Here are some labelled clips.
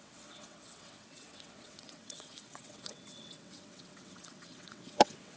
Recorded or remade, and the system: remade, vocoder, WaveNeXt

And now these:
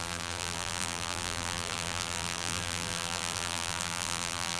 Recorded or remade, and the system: remade, vocoder, BigVGAN v2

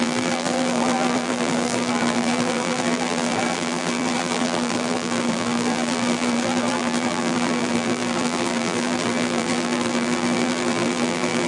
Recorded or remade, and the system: remade, vocoder, BigVGAN v2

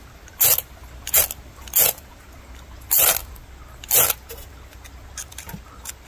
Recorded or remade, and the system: recorded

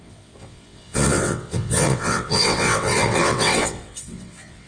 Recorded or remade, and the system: remade, vocoder, WaveNeXt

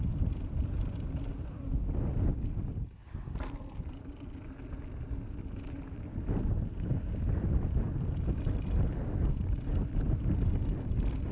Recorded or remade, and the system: recorded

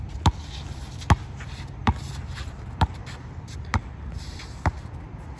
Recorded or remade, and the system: recorded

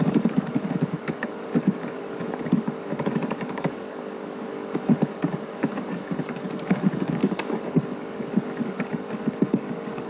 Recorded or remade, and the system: remade, codec, DAC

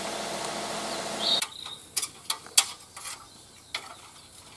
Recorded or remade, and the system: recorded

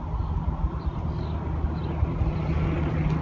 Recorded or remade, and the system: recorded